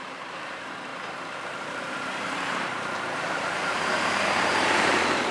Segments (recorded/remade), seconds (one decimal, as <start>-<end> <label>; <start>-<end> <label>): 0.0-0.9 remade; 0.9-1.6 recorded; 1.6-5.3 remade